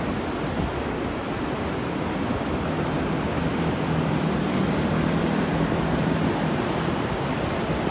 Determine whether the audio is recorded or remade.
recorded